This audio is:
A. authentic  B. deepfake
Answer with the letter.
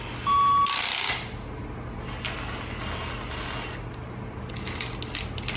A